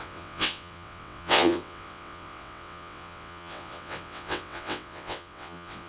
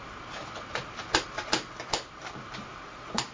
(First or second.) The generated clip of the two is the first